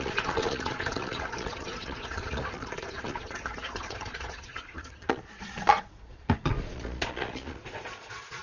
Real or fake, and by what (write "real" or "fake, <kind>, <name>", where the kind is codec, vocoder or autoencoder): fake, vocoder, Vocos